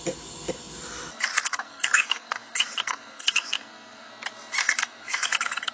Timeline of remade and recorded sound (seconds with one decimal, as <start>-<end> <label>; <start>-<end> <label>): 0.0-1.3 recorded; 1.3-4.1 remade; 4.1-4.6 recorded; 4.6-5.7 remade